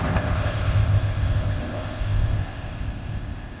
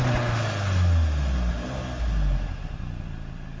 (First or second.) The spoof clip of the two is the first